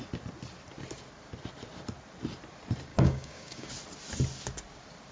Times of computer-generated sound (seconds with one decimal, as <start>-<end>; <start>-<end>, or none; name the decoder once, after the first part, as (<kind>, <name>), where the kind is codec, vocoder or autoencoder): 2.9-3.7 (codec, DAC)